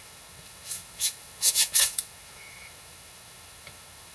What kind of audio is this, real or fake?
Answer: fake